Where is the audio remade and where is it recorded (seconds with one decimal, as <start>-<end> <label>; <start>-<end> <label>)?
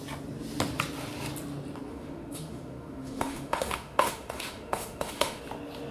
0.0-1.9 recorded; 1.9-5.4 remade; 5.4-5.9 recorded